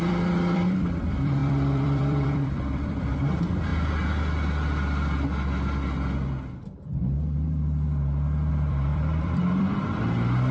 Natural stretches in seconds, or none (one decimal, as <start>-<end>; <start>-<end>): 3.7-8.5